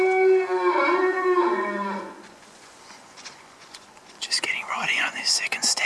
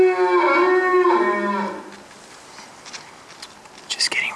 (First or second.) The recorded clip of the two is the second